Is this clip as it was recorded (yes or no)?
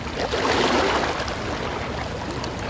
yes